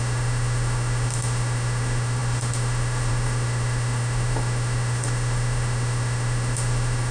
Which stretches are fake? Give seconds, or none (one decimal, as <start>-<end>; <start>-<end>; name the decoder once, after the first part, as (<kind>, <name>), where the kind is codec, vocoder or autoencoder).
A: 0.0-7.1 (autoencoder, DAC-VAE)